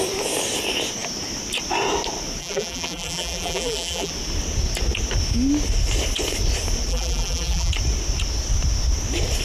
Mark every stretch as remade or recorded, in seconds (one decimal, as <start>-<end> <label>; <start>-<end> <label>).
0.0-2.4 recorded; 2.4-4.1 remade; 4.1-6.9 recorded; 6.9-7.7 remade; 7.7-9.4 recorded